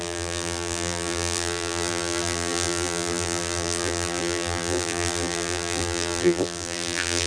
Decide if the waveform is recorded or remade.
remade